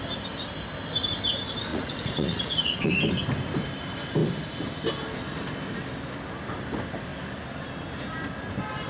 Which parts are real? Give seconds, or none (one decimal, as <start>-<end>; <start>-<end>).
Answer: 0.0-1.7; 2.9-8.9